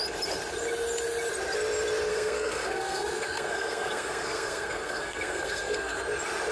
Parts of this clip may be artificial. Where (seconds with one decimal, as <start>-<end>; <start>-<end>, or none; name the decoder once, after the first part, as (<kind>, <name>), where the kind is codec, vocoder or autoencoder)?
2.1-6.0 (codec, SNAC)